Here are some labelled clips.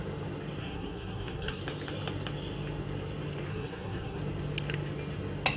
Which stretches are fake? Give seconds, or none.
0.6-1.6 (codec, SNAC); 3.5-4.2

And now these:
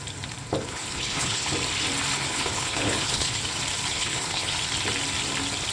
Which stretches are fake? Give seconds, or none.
0.6-1.5 (codec, HILCodec); 2.3-3.4; 3.9-4.5

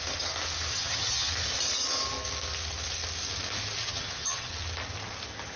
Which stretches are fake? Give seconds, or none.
0.7-1.3 (vocoder, HiFi-GAN); 3.8-4.5

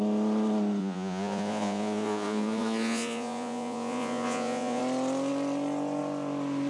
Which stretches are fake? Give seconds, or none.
0.8-4.8 (vocoder, Vocos)

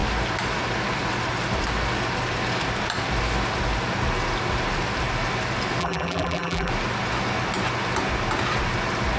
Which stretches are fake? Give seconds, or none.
5.8-6.7 (vocoder, BigVGAN v2)

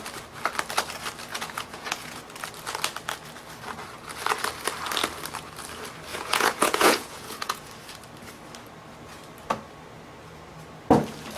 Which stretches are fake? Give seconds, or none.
1.3-2.2 (vocoder, Vocos); 6.1-7.7